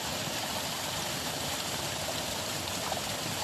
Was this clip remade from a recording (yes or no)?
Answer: no